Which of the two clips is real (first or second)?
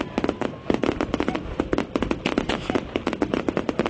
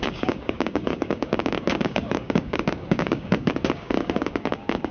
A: first